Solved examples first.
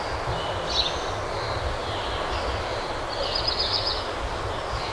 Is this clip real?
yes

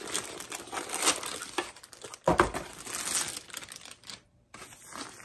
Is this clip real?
yes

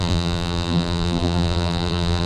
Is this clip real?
no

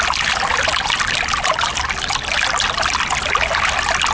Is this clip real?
yes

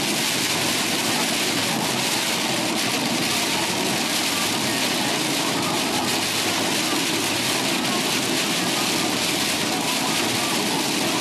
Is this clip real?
yes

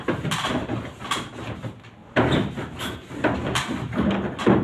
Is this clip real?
yes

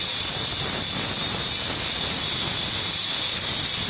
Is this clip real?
yes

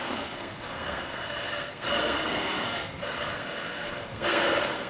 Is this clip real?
no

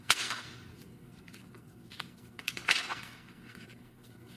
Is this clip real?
no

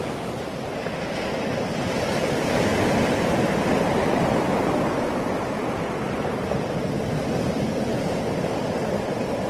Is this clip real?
yes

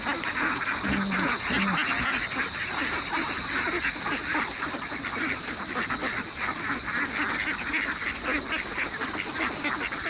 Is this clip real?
yes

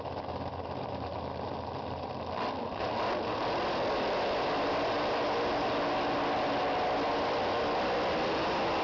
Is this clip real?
yes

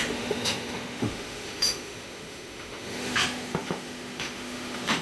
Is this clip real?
no